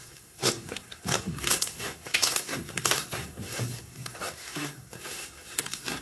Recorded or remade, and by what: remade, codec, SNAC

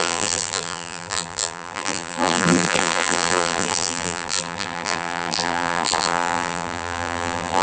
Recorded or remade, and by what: remade, vocoder, BigVGAN v2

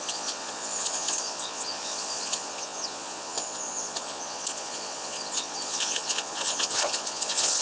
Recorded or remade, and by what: remade, vocoder, Vocos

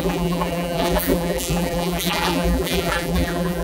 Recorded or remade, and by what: remade, vocoder, BigVGAN v2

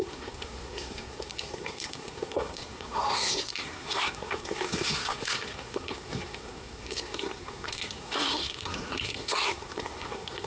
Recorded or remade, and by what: remade, codec, SNAC